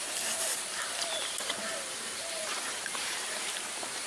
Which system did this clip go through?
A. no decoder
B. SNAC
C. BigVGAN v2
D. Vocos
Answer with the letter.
C